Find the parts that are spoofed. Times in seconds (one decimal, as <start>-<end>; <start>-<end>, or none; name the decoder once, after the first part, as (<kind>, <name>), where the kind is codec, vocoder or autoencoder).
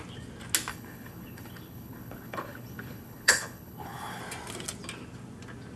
0.7-4.2 (codec, HILCodec)